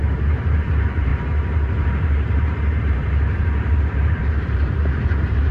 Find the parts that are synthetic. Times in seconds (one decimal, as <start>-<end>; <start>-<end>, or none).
0.0-5.5